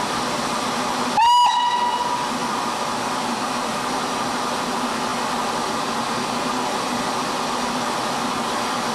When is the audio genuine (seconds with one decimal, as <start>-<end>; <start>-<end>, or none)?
0.0-8.9